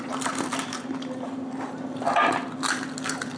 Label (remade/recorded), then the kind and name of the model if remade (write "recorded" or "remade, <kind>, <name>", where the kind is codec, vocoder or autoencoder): recorded